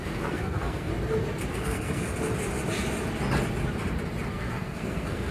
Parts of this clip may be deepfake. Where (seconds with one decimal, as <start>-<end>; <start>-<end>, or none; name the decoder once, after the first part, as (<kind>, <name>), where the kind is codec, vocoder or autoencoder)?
0.0-0.9 (codec, SNAC); 1.5-2.1; 4.3-5.3